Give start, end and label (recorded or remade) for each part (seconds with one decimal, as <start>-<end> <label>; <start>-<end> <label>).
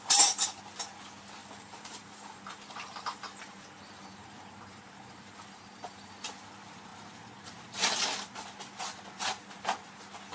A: 0.0-1.4 recorded; 1.4-6.1 remade; 6.1-10.3 recorded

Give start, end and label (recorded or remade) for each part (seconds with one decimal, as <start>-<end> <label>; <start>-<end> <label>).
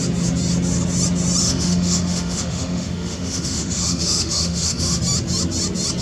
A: 0.0-1.4 recorded; 1.4-5.0 remade; 5.0-6.0 recorded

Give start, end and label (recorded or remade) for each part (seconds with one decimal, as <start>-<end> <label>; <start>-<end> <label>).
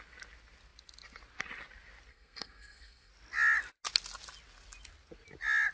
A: 0.0-2.1 recorded; 2.1-3.1 remade; 3.1-5.7 recorded